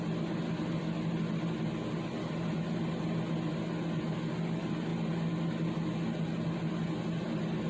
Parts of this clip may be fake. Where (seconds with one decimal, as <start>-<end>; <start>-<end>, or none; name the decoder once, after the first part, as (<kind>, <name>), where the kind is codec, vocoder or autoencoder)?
none